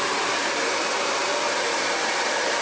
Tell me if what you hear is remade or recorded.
remade